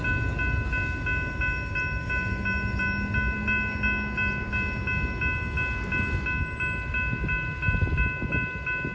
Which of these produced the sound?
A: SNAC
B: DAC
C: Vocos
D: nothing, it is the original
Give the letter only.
D